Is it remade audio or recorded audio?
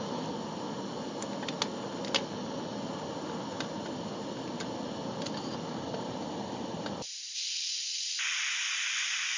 recorded